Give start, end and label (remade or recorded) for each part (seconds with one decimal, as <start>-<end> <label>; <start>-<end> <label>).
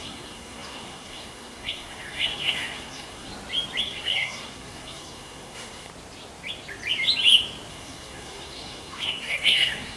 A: 0.0-3.3 remade; 3.3-3.8 recorded; 3.8-5.9 remade; 5.9-7.7 recorded; 7.7-10.0 remade